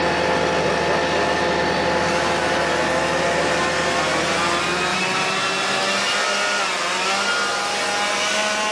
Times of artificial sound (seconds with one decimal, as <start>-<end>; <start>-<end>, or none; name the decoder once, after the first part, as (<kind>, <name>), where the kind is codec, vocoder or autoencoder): 4.9-6.2 (vocoder, BigVGAN v2)